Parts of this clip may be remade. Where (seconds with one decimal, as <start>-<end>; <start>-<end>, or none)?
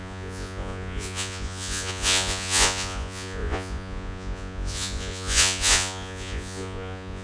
0.0-7.2